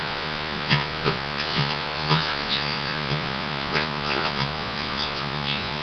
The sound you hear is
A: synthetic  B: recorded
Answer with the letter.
A